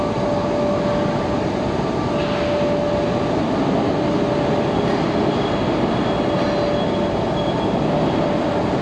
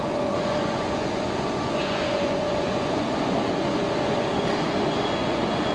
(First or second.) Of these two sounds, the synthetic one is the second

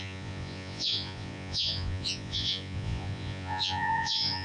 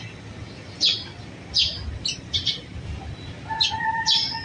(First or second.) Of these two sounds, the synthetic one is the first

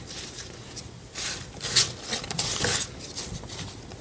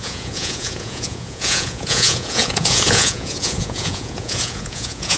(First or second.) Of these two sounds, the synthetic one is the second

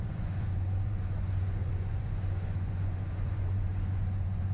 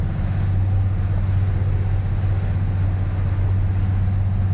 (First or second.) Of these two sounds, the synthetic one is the first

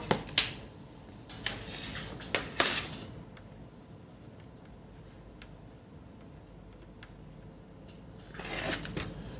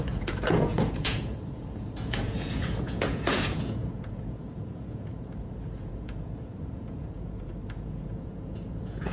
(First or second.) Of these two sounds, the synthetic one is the second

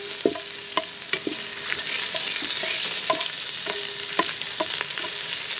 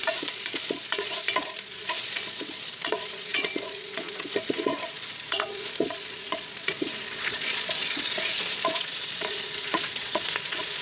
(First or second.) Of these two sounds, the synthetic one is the second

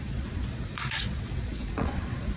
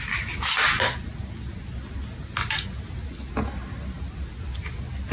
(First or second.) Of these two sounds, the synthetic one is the first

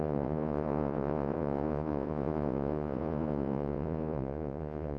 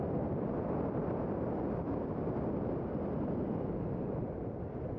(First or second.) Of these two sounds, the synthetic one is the first